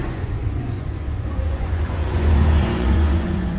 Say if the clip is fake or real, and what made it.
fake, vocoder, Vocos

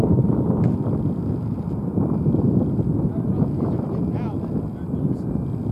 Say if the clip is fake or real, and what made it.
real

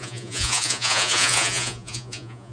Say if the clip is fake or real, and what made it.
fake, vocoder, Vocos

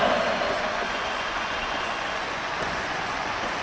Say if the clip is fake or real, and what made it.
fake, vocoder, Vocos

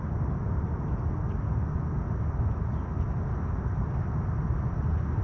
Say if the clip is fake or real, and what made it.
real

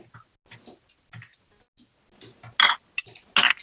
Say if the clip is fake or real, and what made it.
real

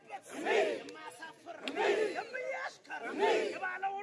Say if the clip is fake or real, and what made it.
real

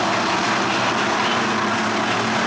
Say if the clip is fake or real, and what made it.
real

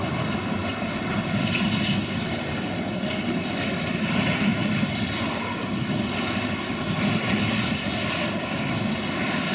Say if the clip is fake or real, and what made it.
real